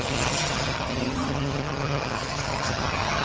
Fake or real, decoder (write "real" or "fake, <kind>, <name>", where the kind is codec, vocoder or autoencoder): fake, vocoder, HiFi-GAN